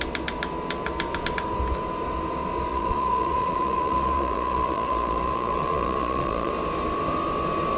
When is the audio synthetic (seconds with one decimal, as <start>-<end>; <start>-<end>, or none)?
2.7-6.5